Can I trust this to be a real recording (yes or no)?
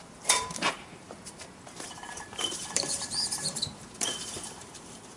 no